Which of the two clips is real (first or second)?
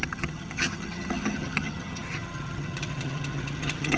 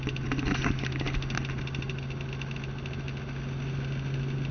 second